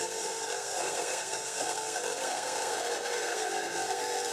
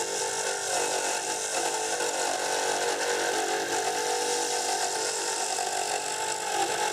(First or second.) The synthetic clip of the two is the first